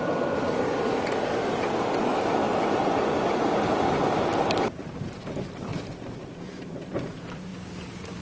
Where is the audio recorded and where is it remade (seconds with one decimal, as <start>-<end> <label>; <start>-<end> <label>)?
0.0-2.4 remade; 2.4-3.4 recorded; 3.4-4.3 remade; 4.3-4.8 recorded; 4.8-5.7 remade; 5.7-6.2 recorded; 6.2-7.5 remade; 7.5-8.2 recorded